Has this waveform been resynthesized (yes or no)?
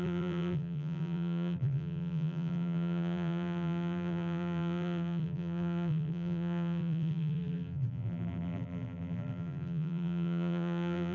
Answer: yes